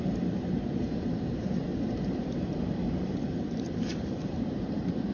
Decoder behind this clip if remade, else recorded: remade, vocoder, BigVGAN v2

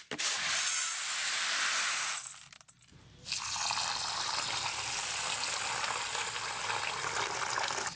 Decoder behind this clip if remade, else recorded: recorded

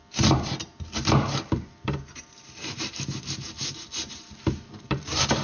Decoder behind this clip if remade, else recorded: remade, vocoder, BigVGAN v2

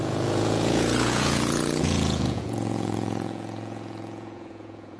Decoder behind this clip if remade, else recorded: remade, vocoder, Vocos